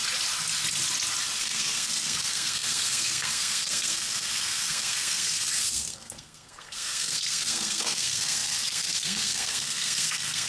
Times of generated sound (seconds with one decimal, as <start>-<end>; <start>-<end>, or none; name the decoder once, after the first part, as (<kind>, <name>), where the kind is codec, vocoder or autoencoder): 1.4-10.5 (codec, SNAC)